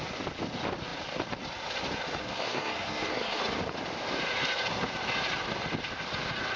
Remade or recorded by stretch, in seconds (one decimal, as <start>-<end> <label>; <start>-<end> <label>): 0.0-2.2 recorded; 2.2-3.4 remade; 3.4-6.6 recorded